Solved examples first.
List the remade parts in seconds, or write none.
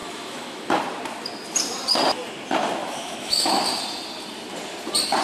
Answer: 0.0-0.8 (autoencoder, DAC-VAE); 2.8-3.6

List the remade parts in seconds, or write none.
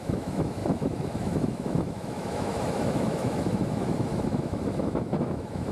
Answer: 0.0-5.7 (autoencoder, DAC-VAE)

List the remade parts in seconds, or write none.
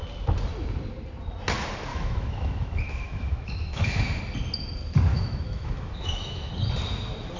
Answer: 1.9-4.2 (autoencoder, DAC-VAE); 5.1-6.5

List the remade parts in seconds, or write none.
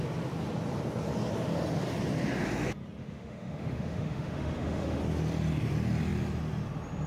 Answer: 3.0-5.0 (autoencoder, DAC-VAE)